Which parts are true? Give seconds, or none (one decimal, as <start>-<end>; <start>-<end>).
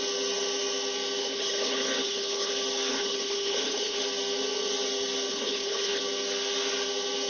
0.0-1.2; 2.5-2.9; 4.0-5.3; 6.0-7.3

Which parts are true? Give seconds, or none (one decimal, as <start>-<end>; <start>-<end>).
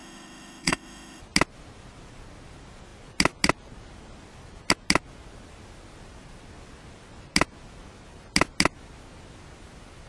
1.2-10.1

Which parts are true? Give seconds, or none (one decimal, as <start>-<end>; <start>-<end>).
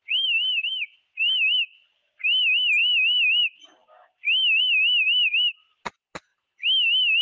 0.0-7.2